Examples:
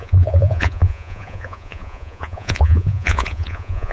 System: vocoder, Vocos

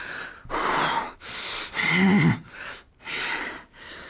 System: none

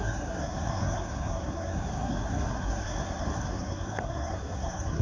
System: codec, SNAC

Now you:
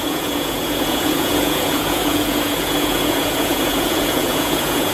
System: vocoder, Vocos